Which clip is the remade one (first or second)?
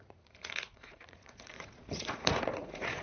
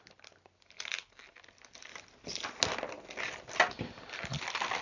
first